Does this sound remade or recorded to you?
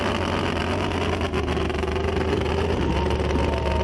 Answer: recorded